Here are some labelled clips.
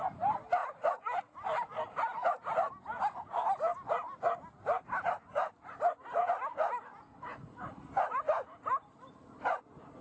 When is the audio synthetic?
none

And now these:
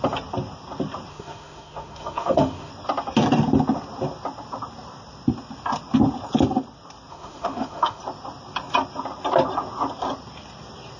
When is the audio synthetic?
1.1-2.7; 7.1-8.0

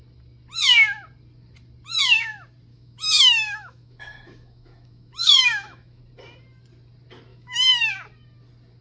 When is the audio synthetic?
2.7-6.0; 7.3-7.9

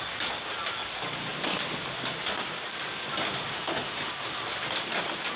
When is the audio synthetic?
3.5-4.1

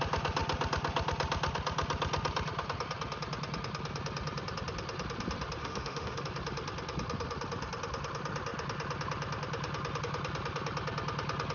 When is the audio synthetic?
5.6-6.2

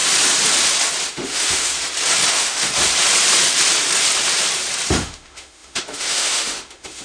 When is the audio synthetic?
1.1-1.7; 2.3-2.7; 4.9-7.0